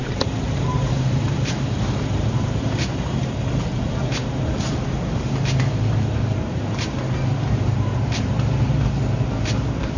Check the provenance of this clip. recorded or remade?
remade